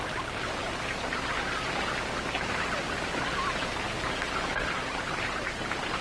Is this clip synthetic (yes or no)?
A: no